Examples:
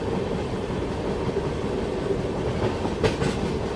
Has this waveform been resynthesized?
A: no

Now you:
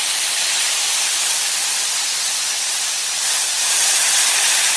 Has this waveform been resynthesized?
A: yes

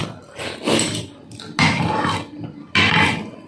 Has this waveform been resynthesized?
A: no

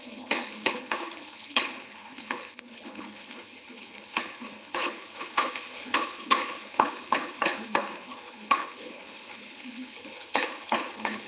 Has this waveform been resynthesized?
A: yes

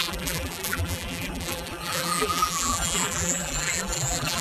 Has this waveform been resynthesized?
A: yes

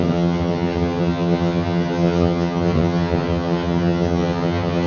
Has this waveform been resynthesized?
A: yes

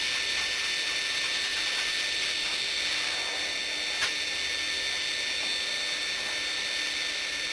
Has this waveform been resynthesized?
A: no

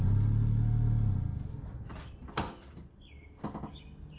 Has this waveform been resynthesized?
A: no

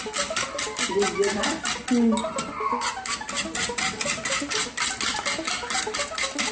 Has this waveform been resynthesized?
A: no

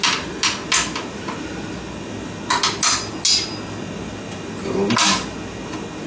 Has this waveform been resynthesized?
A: no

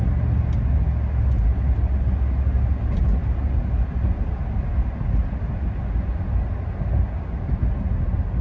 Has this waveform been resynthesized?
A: no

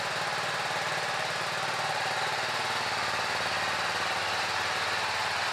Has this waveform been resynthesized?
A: no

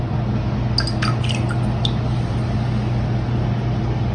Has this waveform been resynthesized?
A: no